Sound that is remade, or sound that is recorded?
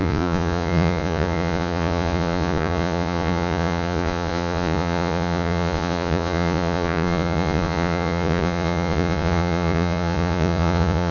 remade